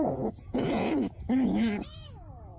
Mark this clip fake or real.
fake